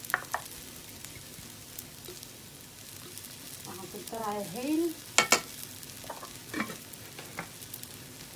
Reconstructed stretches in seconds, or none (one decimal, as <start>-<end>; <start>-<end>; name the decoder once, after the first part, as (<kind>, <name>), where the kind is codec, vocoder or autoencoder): none